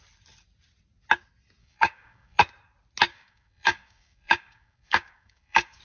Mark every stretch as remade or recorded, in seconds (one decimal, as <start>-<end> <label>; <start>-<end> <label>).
0.0-1.6 recorded; 1.6-2.4 remade; 2.4-3.1 recorded; 3.1-5.8 remade